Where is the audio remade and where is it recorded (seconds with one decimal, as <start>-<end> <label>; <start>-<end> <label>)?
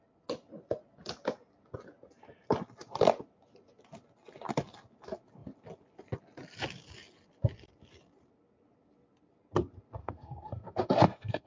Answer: 0.0-10.0 recorded; 10.0-11.5 remade